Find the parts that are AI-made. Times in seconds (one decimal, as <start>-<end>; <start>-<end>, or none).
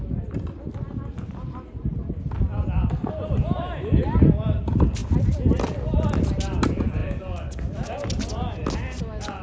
none